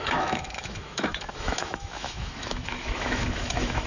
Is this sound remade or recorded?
remade